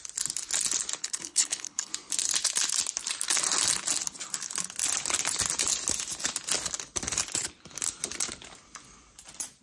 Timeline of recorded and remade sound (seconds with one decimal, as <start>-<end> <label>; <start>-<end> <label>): 0.0-1.0 recorded; 1.0-1.9 remade; 1.9-9.6 recorded